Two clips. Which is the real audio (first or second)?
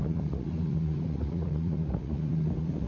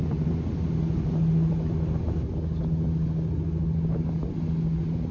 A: second